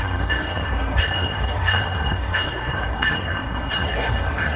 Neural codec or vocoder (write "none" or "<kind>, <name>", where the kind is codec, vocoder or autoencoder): codec, SNAC